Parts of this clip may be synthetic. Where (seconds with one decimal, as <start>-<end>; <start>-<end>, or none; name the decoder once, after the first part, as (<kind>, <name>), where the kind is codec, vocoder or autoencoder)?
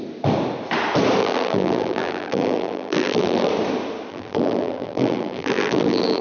1.2-3.5 (vocoder, BigVGAN v2); 4.1-6.2